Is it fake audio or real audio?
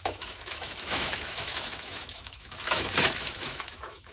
fake